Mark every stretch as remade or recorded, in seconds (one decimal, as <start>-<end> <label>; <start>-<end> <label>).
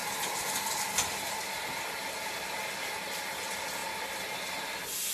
0.0-5.1 recorded